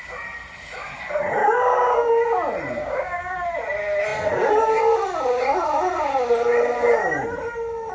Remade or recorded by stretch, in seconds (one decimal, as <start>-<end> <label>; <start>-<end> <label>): 0.0-1.4 recorded; 1.4-2.1 remade; 2.1-2.8 recorded; 2.8-3.4 remade; 3.4-7.9 recorded